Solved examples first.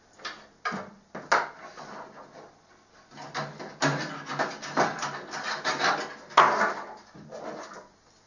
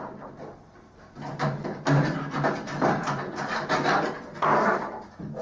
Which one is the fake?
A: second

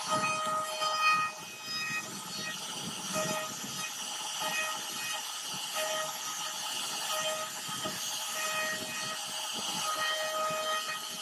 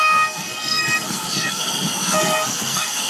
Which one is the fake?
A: second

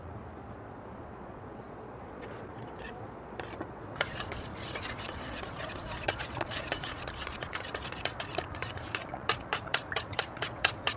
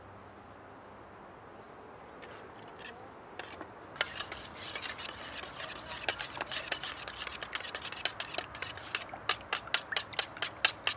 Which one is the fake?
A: first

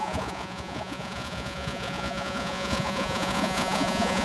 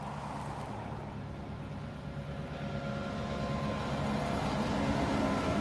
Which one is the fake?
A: first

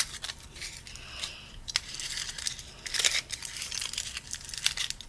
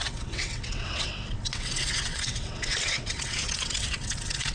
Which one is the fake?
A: second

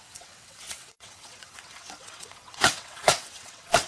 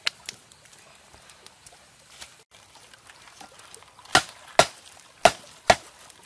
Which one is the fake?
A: first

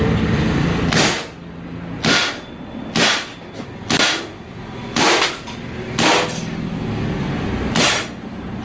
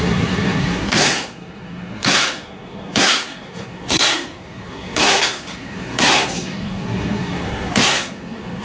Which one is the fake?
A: second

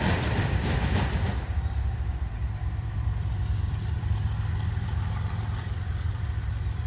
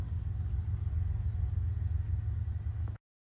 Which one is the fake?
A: first